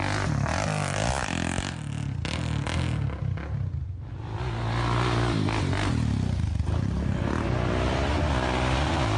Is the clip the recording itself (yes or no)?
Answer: yes